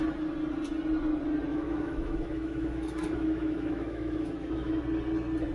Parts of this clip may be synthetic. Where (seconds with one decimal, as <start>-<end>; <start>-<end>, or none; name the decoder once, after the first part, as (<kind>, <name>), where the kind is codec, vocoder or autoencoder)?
1.5-4.8 (autoencoder, DAC-VAE)